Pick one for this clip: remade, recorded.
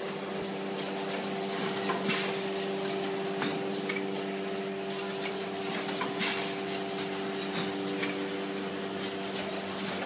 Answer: recorded